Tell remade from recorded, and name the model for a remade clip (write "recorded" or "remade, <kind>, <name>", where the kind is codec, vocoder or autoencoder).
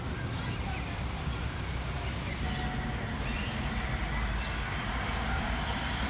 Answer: recorded